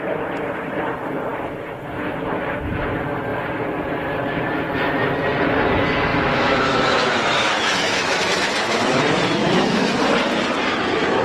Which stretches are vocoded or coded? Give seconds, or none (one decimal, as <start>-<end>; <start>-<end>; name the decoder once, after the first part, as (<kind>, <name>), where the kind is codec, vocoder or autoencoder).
6.1-9.0 (autoencoder, DAC-VAE); 9.4-9.9